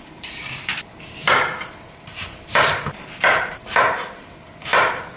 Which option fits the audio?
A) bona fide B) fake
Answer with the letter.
B